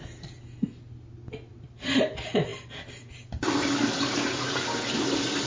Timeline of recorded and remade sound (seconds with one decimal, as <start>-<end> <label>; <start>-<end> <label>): 0.0-5.5 recorded